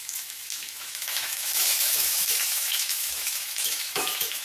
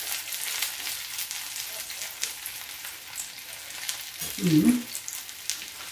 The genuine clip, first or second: second